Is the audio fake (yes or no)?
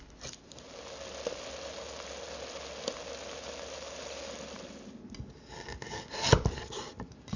no